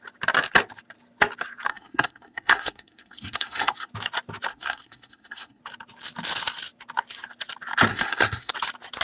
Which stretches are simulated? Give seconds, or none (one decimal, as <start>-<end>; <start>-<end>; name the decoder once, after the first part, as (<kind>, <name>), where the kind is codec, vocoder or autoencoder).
1.7-3.9 (codec, SNAC); 4.5-5.6; 7.9-8.5